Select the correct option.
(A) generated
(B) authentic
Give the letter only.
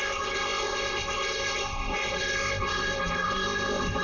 A